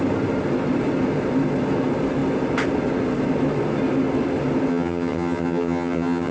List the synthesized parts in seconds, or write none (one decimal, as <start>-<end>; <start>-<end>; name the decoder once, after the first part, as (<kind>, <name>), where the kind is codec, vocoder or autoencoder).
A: 4.7-6.3 (vocoder, HiFi-GAN)